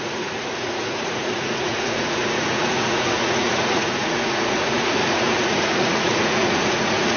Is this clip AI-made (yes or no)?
yes